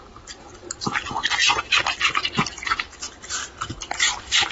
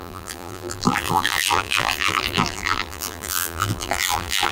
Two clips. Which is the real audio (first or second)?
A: first